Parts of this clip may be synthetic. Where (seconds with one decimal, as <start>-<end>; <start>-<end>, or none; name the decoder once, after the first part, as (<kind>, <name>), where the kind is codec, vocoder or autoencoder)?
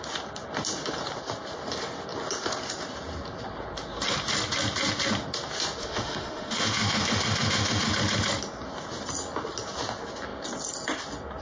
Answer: 5.8-7.9 (autoencoder, DAC-VAE)